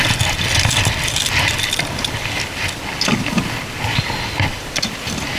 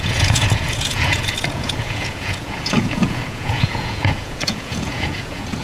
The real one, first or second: first